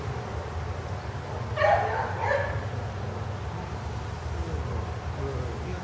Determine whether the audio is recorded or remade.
recorded